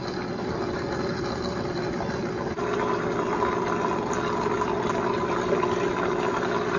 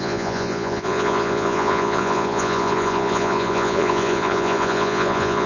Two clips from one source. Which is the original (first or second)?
first